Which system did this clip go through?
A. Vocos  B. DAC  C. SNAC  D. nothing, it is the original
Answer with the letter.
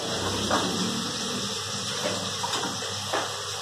D